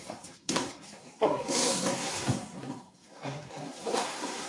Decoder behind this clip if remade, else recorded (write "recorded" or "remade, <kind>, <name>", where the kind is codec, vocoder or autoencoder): remade, codec, SNAC